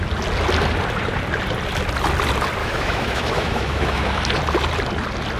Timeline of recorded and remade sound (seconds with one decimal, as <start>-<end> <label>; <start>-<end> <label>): 0.0-2.6 recorded; 2.6-4.2 remade; 4.2-5.4 recorded